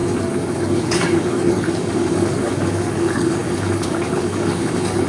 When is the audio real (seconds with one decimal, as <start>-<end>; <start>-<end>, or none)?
none